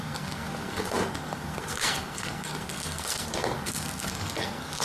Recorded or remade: remade